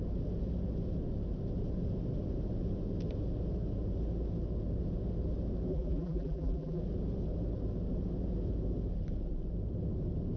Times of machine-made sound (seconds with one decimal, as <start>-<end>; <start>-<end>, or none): 5.7-6.8